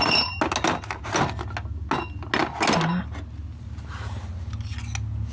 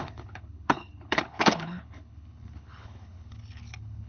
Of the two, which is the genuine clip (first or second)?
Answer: first